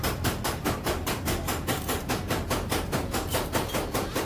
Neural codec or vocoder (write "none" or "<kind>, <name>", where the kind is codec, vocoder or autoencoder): vocoder, BigVGAN v2